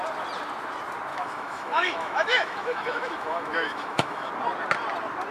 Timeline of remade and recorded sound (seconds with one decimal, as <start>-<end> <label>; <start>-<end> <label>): 0.0-1.1 recorded; 1.1-4.3 remade; 4.3-5.3 recorded